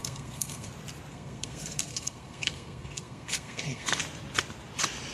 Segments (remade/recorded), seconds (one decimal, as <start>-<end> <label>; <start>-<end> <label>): 0.0-0.7 remade; 0.7-1.1 recorded; 1.1-4.0 remade; 4.0-5.1 recorded